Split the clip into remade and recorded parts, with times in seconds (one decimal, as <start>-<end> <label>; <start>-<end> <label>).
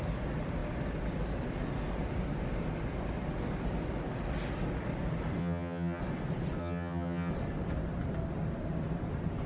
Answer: 0.0-5.4 recorded; 5.4-6.0 remade; 6.0-6.6 recorded; 6.6-7.3 remade; 7.3-9.5 recorded